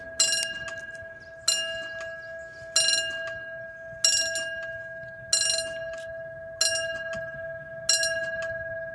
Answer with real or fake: real